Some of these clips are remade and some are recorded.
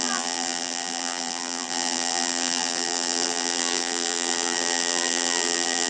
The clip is remade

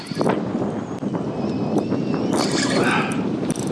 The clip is recorded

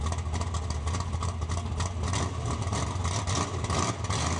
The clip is recorded